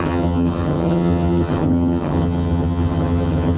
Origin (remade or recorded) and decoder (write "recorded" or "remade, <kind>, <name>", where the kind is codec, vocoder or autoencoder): remade, vocoder, HiFi-GAN